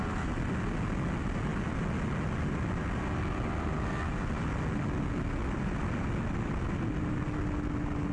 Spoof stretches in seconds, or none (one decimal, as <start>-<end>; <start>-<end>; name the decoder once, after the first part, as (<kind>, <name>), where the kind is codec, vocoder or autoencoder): none